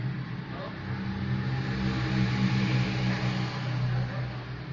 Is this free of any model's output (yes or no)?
yes